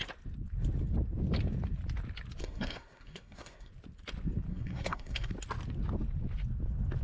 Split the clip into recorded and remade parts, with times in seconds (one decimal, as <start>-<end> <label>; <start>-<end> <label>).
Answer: 0.0-2.4 recorded; 2.4-3.7 remade; 3.7-4.5 recorded; 4.5-5.3 remade; 5.3-7.0 recorded